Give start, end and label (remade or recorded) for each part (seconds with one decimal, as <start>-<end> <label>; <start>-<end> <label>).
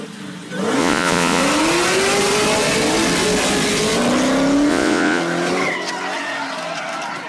0.0-0.8 recorded; 0.8-1.4 remade; 1.4-4.7 recorded; 4.7-5.2 remade; 5.2-7.3 recorded